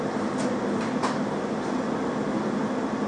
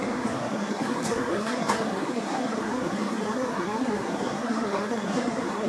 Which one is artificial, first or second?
second